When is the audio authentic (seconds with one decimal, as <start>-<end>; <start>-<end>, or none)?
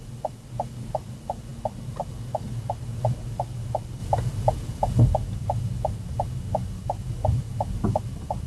0.0-8.5